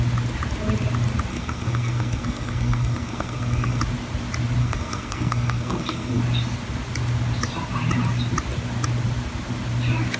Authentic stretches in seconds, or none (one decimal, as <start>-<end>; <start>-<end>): 0.0-1.3; 3.8-4.6; 6.2-10.2